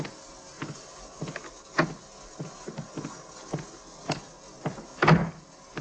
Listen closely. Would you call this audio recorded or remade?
recorded